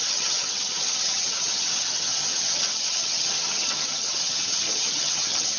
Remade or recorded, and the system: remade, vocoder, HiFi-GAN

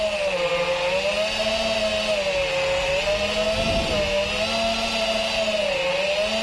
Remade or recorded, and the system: recorded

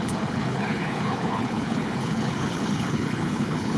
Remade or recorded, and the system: remade, codec, HILCodec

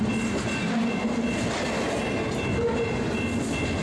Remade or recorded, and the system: recorded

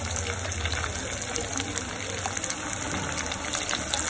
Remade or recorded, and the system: recorded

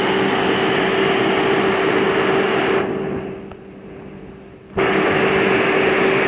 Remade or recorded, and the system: recorded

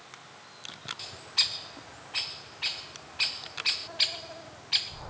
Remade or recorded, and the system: recorded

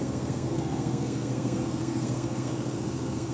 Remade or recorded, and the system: remade, codec, SNAC